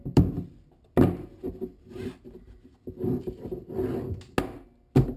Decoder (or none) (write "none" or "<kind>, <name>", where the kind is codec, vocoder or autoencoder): none